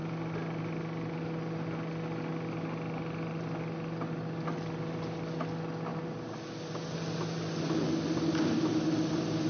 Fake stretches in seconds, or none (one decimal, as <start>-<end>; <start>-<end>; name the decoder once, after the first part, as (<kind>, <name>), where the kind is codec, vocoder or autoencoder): none